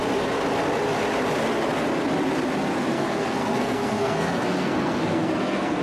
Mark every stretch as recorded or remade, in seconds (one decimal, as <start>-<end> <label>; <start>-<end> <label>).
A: 0.0-2.9 recorded; 2.9-5.8 remade